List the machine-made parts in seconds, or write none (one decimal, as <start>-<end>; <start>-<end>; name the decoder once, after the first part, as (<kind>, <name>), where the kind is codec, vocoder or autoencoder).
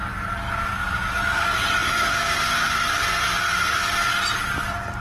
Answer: none